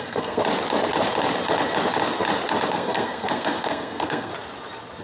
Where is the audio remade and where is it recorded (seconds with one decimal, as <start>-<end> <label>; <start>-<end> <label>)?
0.0-0.4 remade; 0.4-2.7 recorded; 2.7-4.3 remade; 4.3-5.0 recorded